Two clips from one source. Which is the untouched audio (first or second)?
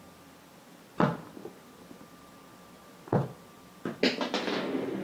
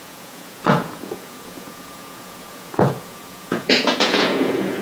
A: first